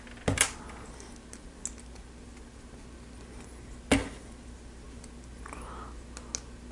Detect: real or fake real